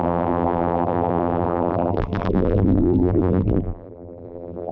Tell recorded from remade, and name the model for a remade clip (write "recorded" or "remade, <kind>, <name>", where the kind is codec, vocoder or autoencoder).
remade, vocoder, BigVGAN v2